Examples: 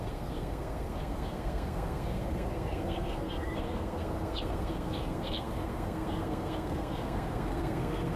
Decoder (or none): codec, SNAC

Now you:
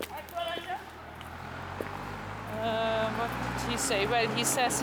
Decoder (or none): none